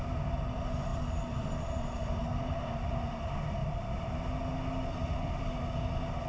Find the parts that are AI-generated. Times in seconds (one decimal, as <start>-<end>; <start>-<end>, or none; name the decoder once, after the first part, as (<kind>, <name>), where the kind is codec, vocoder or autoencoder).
0.9-2.2 (vocoder, BigVGAN v2); 3.6-4.2